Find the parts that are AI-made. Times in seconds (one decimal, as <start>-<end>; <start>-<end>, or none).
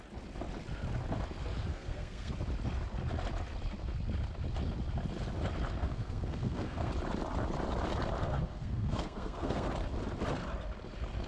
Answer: 1.7-2.3; 5.8-6.9; 8.2-9.7